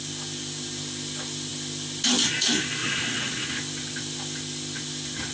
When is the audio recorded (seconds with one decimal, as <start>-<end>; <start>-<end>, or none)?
0.0-2.8; 3.5-5.3